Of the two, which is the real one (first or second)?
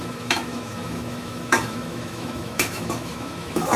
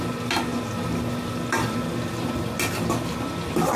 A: second